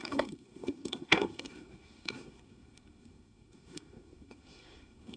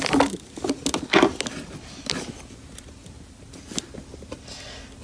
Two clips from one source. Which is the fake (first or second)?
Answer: first